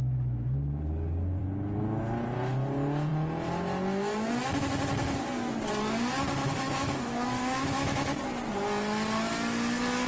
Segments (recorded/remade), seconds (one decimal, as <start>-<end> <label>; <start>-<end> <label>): 0.0-6.4 recorded; 6.4-8.2 remade; 8.2-10.1 recorded